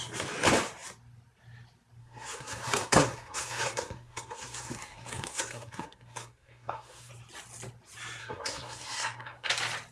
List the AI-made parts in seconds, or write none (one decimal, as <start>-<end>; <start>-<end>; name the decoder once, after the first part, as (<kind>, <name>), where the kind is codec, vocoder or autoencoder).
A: 2.0-7.1 (codec, SNAC); 8.2-9.5